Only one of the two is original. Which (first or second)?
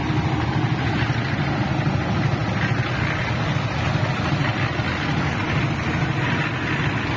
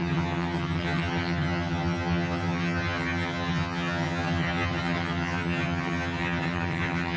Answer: first